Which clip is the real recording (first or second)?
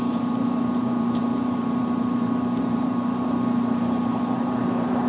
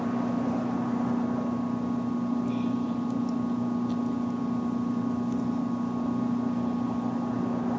second